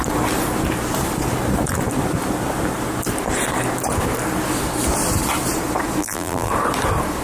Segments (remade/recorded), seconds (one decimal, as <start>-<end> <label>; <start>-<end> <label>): 0.0-6.0 recorded; 6.0-6.5 remade; 6.5-7.2 recorded